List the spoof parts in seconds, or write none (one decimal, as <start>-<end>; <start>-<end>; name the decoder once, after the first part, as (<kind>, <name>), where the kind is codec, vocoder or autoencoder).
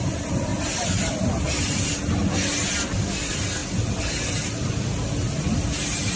0.5-1.3 (vocoder, BigVGAN v2)